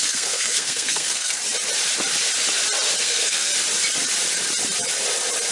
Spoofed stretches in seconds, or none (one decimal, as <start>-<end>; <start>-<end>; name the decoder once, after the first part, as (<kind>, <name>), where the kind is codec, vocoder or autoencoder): 0.0-1.4 (codec, SNAC); 3.0-3.5